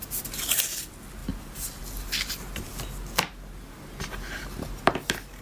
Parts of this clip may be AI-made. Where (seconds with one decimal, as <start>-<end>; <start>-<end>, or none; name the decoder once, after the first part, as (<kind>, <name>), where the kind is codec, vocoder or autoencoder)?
1.2-1.8 (vocoder, BigVGAN v2)